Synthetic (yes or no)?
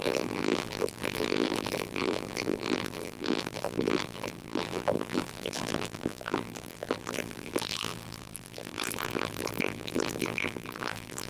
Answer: yes